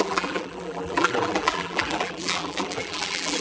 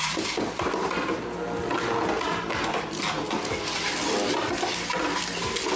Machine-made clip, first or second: first